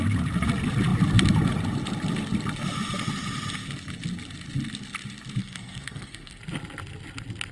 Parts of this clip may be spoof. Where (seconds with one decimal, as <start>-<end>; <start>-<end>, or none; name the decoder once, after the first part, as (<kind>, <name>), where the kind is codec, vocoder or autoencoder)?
5.4-6.4 (codec, SNAC)